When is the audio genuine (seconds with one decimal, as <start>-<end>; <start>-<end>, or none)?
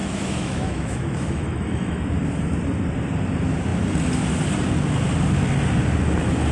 2.0-6.5